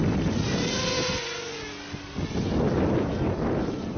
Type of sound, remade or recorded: recorded